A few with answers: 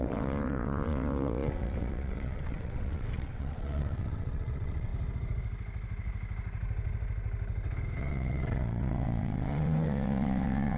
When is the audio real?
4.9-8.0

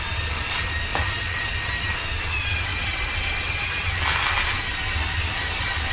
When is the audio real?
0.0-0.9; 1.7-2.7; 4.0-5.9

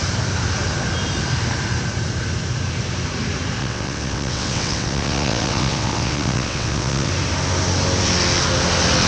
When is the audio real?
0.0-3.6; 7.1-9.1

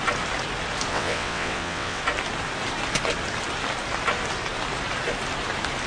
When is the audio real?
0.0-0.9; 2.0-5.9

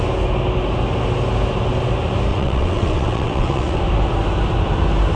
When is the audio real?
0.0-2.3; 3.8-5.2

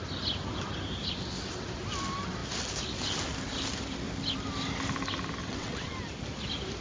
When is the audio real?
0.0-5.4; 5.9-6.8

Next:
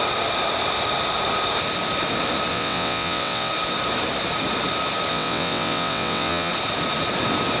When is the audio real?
0.0-2.5; 3.5-5.1; 6.5-7.6

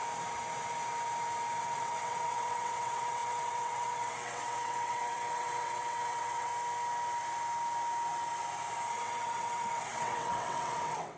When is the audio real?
0.0-1.6; 6.5-8.9